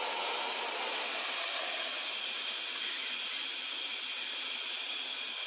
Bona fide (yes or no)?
yes